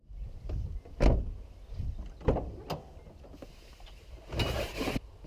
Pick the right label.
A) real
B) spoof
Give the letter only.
A